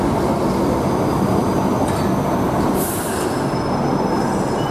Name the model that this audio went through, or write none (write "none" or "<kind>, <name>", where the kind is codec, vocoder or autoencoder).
none